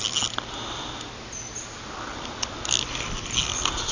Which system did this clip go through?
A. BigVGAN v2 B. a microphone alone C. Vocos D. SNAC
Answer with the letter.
B